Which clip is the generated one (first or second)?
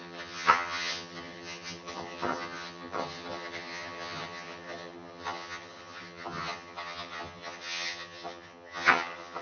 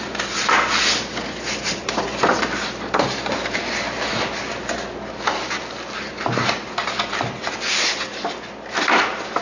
first